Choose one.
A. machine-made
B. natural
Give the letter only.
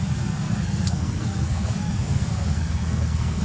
A